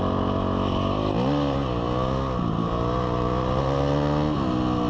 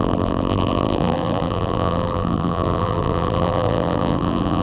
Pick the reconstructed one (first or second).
second